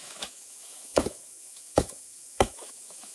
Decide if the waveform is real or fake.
fake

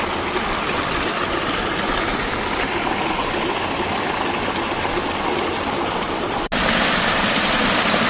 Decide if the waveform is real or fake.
real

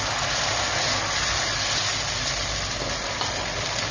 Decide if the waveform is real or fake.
real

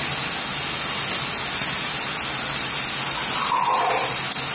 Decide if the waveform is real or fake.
real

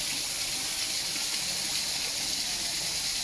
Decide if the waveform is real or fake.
real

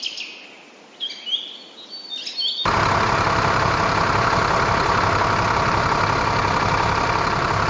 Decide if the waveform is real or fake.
real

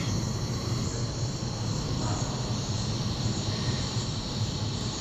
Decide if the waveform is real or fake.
fake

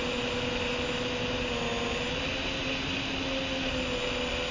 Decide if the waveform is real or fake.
real